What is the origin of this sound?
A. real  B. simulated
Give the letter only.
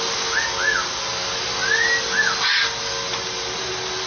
A